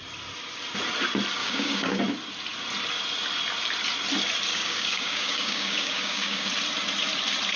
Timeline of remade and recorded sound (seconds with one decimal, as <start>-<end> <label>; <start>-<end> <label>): 0.0-1.4 recorded; 1.4-2.0 remade; 2.0-4.5 recorded; 4.5-6.5 remade; 6.5-7.6 recorded